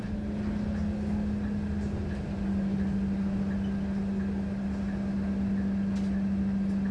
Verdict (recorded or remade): recorded